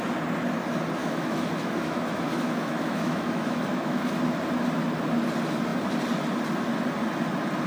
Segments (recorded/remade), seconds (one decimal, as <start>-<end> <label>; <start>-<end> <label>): 0.0-1.0 recorded; 1.0-4.2 remade; 4.2-7.7 recorded